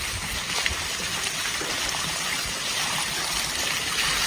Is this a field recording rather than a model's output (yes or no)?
no